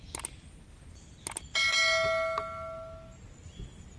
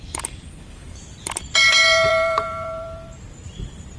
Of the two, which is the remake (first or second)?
second